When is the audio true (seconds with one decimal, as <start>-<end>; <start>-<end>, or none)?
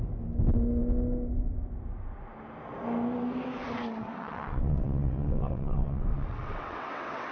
0.0-4.0